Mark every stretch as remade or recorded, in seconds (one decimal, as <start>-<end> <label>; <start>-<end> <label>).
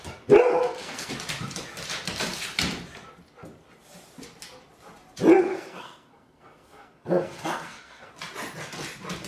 0.0-0.5 recorded; 0.5-1.1 remade; 1.1-5.4 recorded; 5.4-8.1 remade; 8.1-9.3 recorded